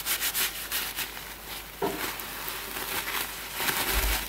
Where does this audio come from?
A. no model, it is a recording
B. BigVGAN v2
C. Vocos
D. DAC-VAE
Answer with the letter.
A